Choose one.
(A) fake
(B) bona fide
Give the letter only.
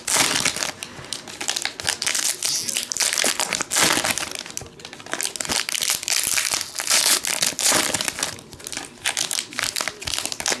B